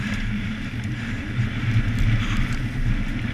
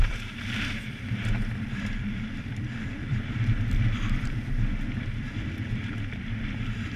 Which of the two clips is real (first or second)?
first